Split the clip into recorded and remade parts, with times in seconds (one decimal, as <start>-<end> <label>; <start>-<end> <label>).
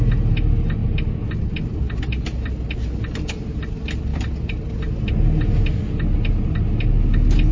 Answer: 0.0-7.5 recorded